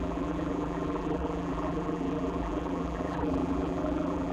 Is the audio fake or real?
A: fake